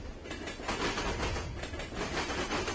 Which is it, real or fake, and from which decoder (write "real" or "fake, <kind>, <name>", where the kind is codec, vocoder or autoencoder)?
real